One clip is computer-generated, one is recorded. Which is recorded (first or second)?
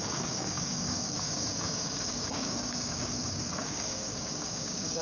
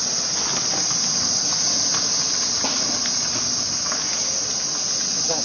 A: second